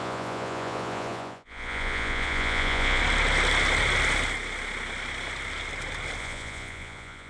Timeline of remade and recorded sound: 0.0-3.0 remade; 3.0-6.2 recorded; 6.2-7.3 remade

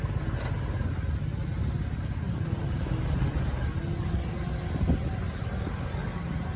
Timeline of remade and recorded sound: 0.0-6.6 recorded

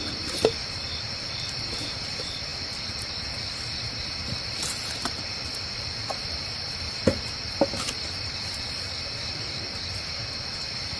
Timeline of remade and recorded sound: 0.0-11.0 recorded

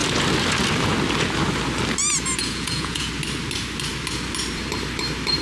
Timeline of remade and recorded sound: 0.0-2.4 recorded; 2.4-3.1 remade; 3.1-5.4 recorded